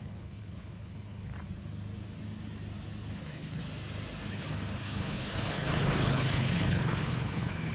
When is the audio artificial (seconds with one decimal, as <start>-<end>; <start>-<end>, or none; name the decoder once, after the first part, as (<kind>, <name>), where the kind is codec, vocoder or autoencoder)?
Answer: 0.0-1.3 (codec, HILCodec); 3.1-3.6; 4.3-7.7